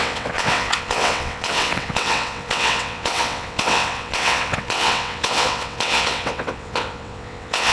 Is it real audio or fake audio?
fake